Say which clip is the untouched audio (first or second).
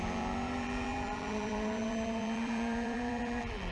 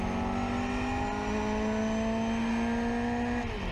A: second